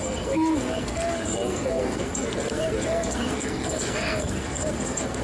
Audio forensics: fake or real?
fake